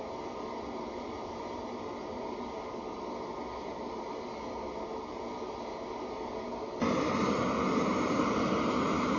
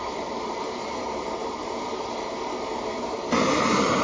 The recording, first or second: first